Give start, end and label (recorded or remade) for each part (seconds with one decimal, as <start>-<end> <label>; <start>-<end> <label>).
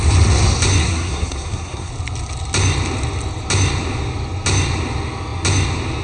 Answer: 0.0-0.8 recorded; 0.8-1.9 remade; 1.9-6.0 recorded